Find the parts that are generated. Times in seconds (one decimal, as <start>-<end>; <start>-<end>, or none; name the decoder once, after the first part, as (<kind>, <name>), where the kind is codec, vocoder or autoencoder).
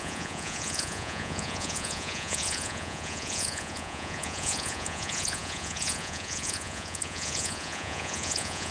0.0-8.7 (vocoder, Vocos)